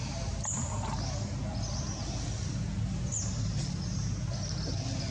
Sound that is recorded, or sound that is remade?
recorded